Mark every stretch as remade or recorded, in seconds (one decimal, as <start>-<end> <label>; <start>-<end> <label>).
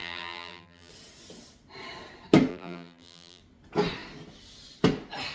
0.0-0.9 remade; 0.9-2.5 recorded; 2.5-3.4 remade; 3.4-5.3 recorded